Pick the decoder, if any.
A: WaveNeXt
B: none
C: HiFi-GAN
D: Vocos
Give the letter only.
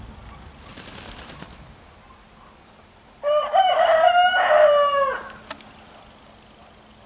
B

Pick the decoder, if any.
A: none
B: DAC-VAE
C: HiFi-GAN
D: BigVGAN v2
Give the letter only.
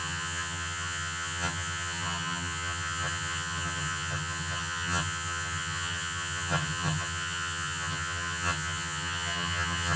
C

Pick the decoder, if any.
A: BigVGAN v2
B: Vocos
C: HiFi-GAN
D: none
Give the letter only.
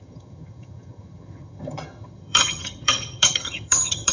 C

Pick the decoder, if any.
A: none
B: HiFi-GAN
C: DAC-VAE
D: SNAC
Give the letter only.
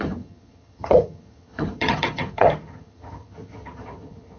B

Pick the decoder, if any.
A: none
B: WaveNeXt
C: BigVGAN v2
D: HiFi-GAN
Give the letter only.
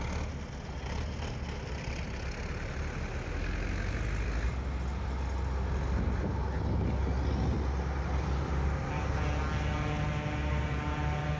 A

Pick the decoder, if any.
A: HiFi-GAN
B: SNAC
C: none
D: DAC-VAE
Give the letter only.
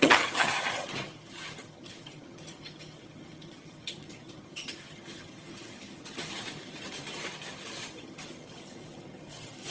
A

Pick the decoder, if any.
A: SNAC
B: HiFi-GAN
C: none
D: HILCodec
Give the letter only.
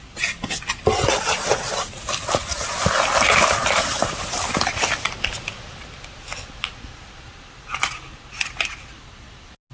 C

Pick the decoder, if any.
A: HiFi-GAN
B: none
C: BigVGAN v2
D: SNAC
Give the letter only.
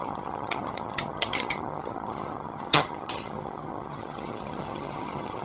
A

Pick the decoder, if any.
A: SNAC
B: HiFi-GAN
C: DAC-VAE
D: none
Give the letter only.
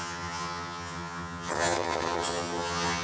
B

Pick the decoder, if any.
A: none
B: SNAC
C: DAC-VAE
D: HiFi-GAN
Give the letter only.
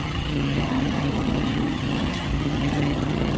D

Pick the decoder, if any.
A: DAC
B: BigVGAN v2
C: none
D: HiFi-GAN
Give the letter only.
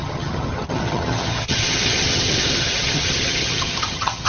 D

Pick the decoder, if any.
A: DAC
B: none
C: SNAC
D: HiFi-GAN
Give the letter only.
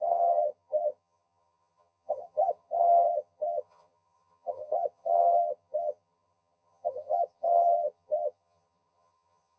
D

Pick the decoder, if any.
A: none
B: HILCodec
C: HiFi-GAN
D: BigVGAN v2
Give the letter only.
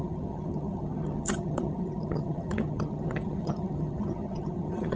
C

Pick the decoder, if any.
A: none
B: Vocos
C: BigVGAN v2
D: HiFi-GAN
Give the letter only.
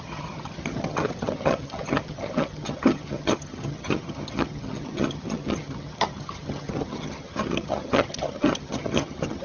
D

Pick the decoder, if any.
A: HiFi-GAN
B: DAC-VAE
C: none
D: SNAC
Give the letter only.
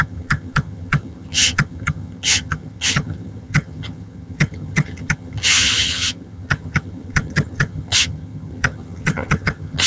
A